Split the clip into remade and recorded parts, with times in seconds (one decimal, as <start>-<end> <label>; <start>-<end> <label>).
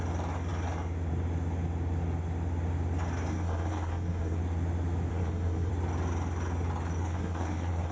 0.0-3.3 recorded; 3.3-4.4 remade; 4.4-5.1 recorded; 5.1-5.7 remade; 5.7-7.0 recorded; 7.0-7.9 remade